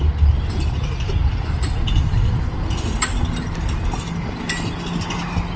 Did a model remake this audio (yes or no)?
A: no